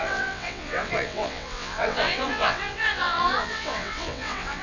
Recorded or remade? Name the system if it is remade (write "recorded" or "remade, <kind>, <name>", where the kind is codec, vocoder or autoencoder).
remade, vocoder, WaveNeXt